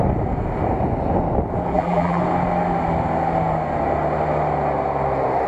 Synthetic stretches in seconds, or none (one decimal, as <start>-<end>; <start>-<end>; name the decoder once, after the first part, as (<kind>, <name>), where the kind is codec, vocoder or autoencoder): 1.7-2.2 (vocoder, BigVGAN v2)